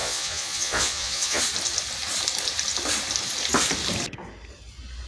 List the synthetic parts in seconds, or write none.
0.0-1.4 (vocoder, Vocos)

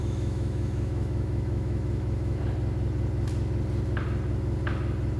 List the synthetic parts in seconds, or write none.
0.0-2.4 (autoencoder, DAC-VAE)

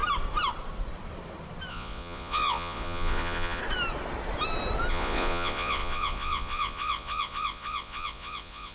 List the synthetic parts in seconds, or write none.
1.7-3.6 (vocoder, Vocos); 4.9-8.7

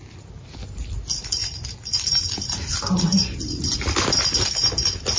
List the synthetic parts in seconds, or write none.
none

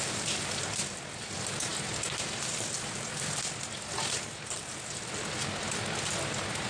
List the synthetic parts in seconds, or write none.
none

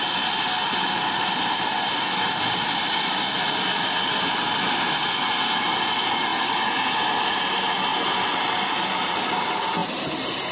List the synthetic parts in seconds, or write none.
7.9-9.1 (vocoder, BigVGAN v2); 9.8-10.5

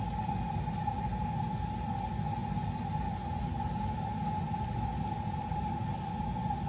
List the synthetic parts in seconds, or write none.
none